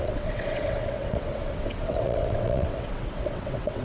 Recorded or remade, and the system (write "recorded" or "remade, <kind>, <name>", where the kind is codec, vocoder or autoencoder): remade, vocoder, WaveNeXt